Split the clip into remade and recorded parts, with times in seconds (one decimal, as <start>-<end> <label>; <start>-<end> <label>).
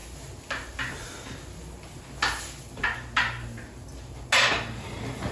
0.0-5.3 recorded